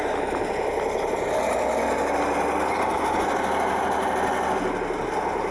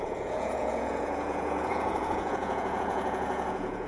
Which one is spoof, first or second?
second